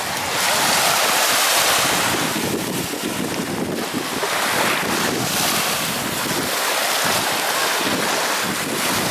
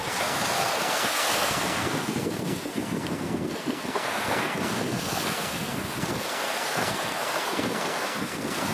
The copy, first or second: second